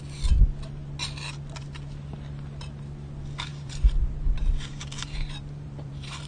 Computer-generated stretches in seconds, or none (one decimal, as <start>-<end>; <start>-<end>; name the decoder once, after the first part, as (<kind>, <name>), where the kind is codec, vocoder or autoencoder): 3.5-6.3 (vocoder, BigVGAN v2)